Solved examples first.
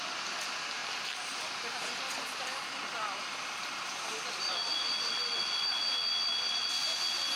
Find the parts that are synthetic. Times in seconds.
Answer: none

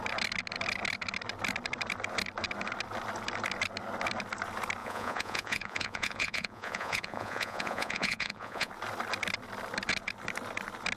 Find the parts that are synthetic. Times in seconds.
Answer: 4.8-8.7 (vocoder, Vocos)

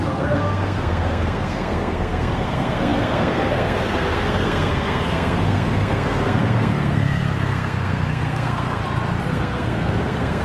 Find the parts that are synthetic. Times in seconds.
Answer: 0.0-8.8 (codec, SNAC); 9.3-10.4

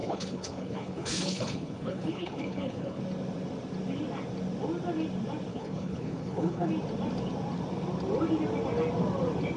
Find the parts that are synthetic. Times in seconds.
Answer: 0.0-3.0 (codec, HILCodec); 5.5-6.7

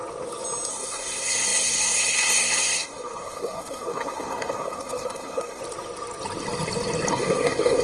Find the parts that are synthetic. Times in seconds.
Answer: 0.7-5.6 (codec, SNAC); 7.1-7.8

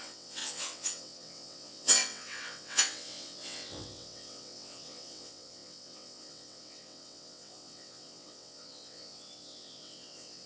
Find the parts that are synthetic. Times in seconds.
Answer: 0.0-10.5 (vocoder, WaveNeXt)

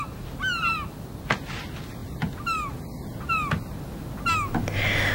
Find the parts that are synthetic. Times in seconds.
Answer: none